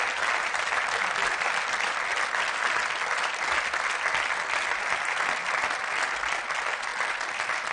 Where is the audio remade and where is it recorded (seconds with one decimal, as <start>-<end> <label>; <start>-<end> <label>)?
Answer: 0.0-7.7 recorded